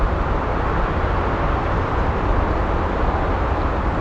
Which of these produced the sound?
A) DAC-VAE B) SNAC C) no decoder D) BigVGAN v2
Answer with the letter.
C